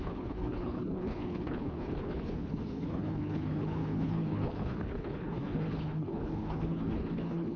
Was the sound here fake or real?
fake